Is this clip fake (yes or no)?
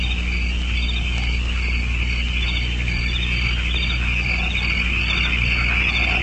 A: no